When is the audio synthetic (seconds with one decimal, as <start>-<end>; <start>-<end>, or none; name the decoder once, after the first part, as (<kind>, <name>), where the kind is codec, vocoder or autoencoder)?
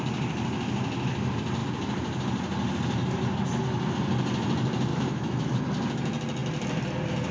4.9-5.6 (autoencoder, DAC-VAE)